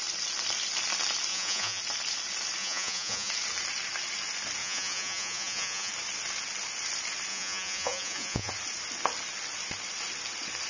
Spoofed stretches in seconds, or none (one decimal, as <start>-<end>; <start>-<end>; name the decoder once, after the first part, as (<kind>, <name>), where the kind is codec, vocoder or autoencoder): 1.3-1.8 (vocoder, Vocos); 2.6-3.3; 4.6-5.9; 7.3-8.5